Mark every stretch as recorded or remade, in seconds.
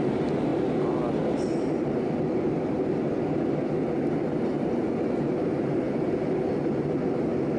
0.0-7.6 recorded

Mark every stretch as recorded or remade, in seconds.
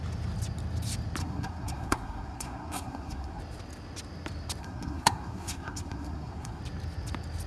0.0-1.2 recorded; 1.2-3.4 remade; 3.4-4.6 recorded; 4.6-6.6 remade; 6.6-7.5 recorded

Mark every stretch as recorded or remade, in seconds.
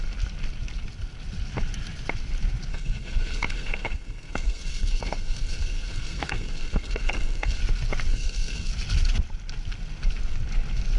0.0-2.7 recorded; 2.7-7.6 remade; 7.6-8.1 recorded; 8.1-8.7 remade; 8.7-11.0 recorded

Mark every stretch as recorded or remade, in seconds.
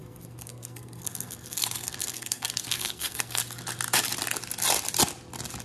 0.0-3.4 remade; 3.4-5.6 recorded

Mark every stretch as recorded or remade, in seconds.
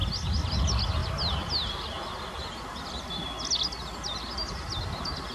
0.0-5.3 recorded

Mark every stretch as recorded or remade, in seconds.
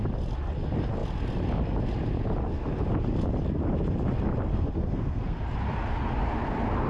0.0-4.5 recorded; 4.5-5.4 remade; 5.4-6.9 recorded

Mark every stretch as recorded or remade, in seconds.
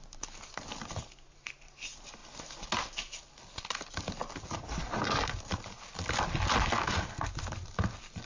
0.0-8.3 recorded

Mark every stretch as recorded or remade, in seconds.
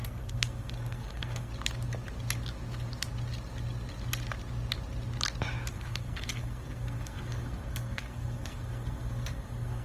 0.0-1.5 remade; 1.5-5.7 recorded; 5.7-9.8 remade